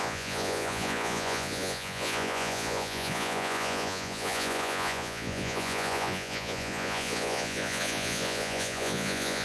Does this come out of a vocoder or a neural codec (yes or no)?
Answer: yes